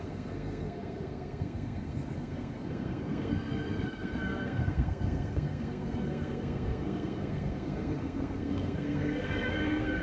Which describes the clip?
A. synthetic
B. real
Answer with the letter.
A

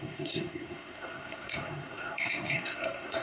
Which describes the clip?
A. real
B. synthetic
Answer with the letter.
B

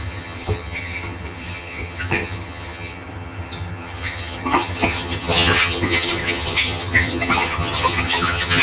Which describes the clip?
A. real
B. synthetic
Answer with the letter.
B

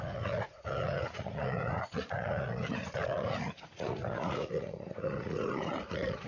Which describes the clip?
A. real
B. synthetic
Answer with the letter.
B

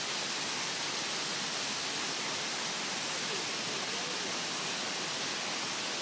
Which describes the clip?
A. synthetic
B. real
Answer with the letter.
B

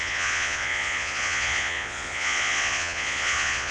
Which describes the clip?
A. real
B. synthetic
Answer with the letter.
B